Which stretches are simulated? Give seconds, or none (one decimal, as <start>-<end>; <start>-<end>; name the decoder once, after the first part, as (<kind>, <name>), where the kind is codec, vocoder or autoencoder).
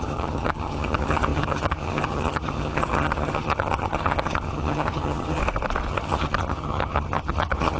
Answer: 0.0-5.4 (vocoder, HiFi-GAN); 5.9-7.8